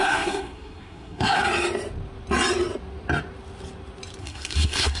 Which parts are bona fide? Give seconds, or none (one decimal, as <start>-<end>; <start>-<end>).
1.4-4.2